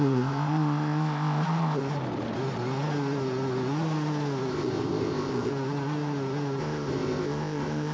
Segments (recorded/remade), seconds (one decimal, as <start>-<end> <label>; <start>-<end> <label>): 0.0-1.8 remade; 1.8-4.5 recorded; 4.5-5.5 remade; 5.5-6.6 recorded; 6.6-7.9 remade